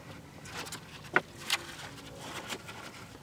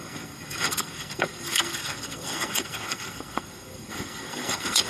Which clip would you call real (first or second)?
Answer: first